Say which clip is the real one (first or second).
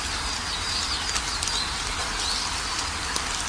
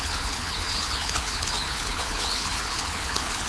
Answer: first